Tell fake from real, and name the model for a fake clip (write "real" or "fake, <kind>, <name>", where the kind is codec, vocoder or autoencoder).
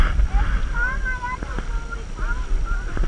real